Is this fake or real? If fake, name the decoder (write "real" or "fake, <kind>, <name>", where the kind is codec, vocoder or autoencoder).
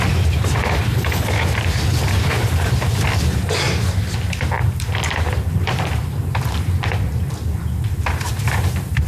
fake, vocoder, BigVGAN v2